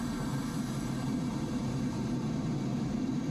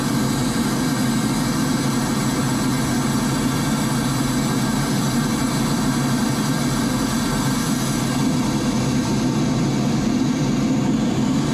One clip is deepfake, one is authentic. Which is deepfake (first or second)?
first